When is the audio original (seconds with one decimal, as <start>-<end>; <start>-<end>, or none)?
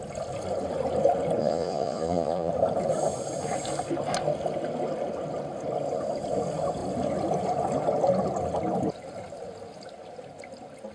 0.0-1.4; 2.5-10.9